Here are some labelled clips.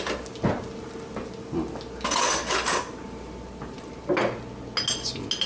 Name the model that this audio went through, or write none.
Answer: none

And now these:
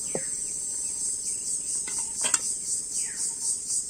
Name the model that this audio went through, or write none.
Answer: none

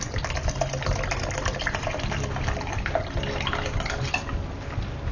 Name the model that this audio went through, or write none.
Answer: none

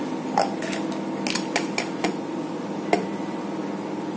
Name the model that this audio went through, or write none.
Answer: none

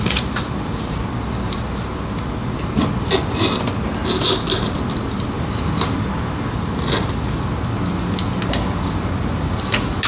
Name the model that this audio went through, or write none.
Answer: none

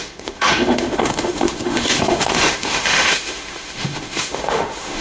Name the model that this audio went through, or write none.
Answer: autoencoder, DAC-VAE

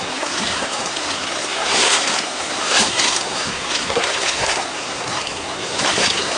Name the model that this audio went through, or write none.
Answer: codec, SNAC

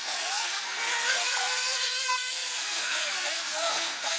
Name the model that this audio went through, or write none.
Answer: codec, SNAC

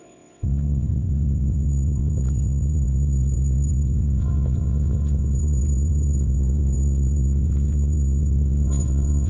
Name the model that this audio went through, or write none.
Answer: vocoder, WaveNeXt